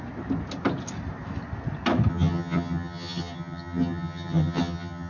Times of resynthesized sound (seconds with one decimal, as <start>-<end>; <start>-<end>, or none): 2.1-5.1